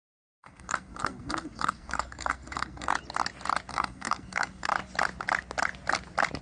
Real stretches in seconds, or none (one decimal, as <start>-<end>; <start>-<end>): 2.9-3.7; 4.7-6.4